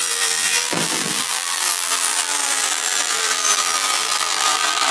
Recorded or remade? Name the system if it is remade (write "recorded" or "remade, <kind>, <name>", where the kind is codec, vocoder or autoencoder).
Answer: remade, vocoder, BigVGAN v2